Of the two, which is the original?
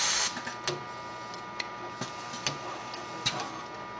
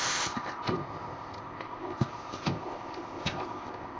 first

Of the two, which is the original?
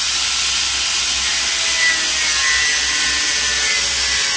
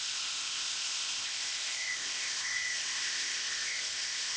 first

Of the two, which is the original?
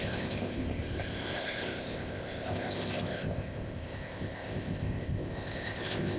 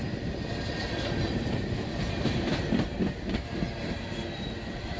second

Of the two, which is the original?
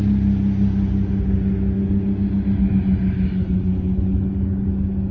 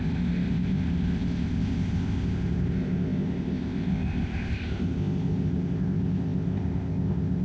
first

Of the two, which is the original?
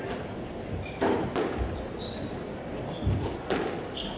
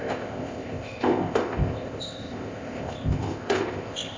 first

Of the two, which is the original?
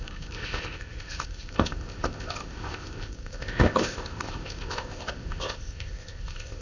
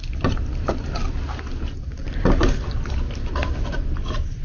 second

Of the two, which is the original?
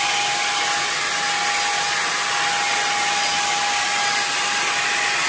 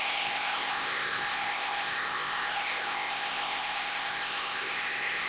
first